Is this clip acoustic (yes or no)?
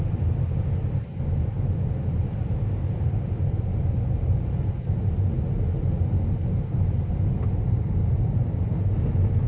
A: yes